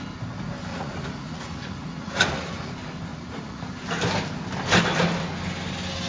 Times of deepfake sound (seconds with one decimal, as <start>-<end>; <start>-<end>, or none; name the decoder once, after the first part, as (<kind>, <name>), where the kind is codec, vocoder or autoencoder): 0.7-2.7 (vocoder, Vocos); 3.1-3.7

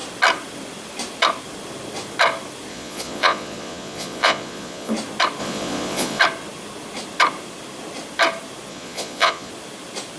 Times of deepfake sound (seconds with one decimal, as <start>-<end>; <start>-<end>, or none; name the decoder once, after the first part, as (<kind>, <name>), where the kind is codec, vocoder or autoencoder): 2.7-4.9 (vocoder, Vocos); 5.4-6.2; 8.7-9.5

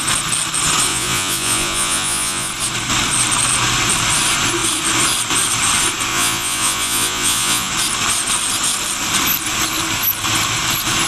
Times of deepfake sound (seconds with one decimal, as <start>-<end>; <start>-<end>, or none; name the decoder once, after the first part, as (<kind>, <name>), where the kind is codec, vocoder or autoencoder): 0.9-2.5 (vocoder, Vocos); 6.1-7.7